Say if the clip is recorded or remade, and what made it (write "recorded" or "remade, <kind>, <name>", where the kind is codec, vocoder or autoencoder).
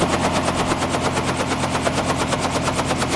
recorded